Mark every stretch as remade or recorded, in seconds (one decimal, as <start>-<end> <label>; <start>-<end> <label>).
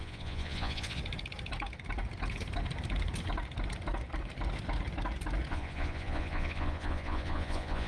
0.0-1.0 remade; 1.0-5.5 recorded; 5.5-7.9 remade